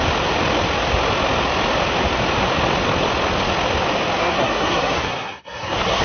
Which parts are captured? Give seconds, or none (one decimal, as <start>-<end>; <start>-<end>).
0.0-4.2

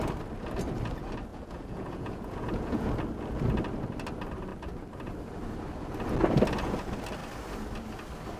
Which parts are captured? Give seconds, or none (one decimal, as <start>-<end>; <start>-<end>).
0.0-1.3; 2.9-8.4

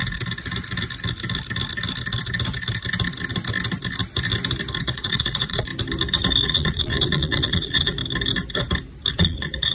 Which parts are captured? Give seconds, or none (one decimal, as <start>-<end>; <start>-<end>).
0.0-4.8; 5.7-6.4; 8.0-9.1

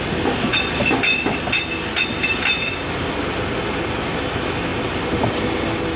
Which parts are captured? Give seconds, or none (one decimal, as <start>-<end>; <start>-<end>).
0.0-6.0

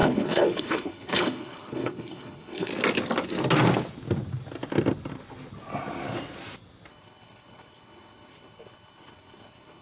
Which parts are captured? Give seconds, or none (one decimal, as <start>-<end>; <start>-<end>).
2.7-6.9

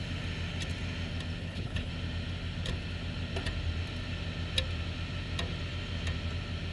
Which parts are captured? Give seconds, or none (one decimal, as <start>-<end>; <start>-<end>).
0.0-1.4; 1.9-6.7

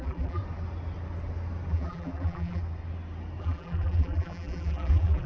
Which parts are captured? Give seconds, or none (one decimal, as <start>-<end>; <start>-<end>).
0.4-1.7; 2.6-3.4